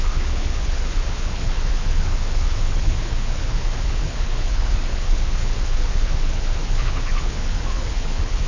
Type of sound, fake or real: fake